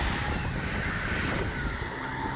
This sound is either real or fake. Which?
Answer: real